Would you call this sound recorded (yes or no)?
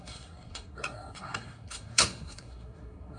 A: no